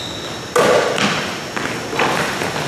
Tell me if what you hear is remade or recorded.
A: recorded